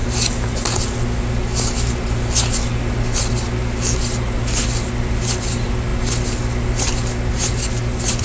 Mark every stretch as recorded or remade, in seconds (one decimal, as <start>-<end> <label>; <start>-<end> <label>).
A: 0.0-8.2 recorded